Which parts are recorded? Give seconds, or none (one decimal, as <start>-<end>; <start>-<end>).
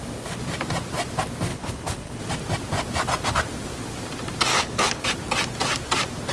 0.0-1.5; 2.2-4.5; 5.0-6.3